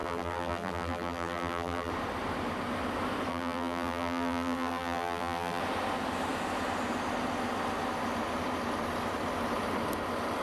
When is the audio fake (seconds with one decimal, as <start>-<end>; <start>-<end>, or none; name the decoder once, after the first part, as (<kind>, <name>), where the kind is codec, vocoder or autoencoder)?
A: 0.0-1.9 (vocoder, BigVGAN v2); 3.3-5.6